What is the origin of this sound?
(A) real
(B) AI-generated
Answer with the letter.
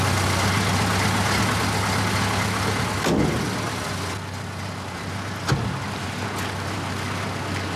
A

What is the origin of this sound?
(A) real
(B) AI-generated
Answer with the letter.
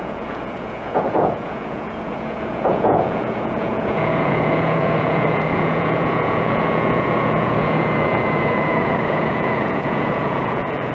B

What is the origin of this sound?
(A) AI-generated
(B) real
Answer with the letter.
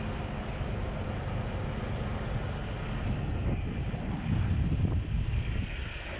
B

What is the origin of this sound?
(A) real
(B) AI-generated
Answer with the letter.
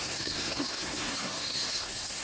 B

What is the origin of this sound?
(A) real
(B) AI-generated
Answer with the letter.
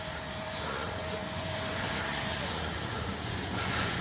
B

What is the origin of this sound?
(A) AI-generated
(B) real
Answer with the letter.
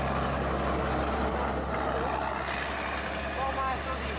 B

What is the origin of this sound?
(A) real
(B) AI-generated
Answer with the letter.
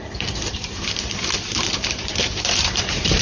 B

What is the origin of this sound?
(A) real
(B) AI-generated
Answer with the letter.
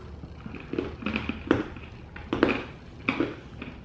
A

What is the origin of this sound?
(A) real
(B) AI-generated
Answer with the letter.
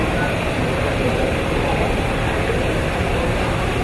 A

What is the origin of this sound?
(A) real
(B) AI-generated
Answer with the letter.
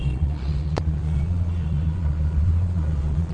B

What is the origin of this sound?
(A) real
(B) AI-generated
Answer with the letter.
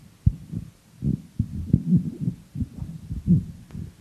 A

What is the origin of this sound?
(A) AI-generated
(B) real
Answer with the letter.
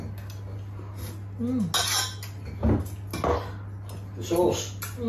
B